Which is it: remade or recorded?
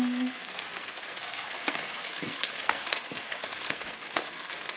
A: remade